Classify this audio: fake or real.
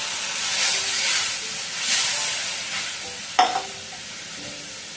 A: real